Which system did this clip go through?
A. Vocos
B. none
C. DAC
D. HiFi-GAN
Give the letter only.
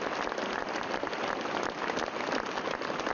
B